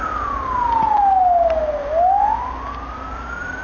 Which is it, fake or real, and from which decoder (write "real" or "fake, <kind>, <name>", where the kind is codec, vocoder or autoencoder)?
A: real